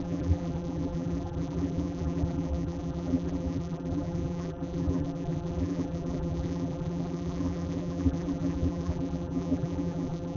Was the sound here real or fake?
fake